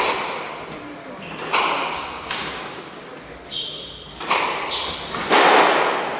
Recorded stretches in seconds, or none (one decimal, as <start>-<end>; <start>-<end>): 0.0-1.8; 3.1-6.2